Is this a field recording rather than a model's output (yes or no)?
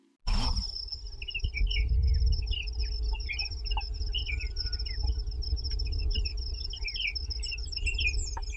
yes